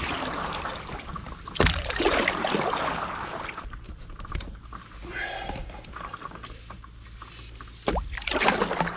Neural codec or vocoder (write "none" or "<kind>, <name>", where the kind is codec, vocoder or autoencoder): none